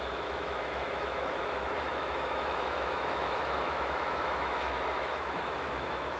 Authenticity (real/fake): fake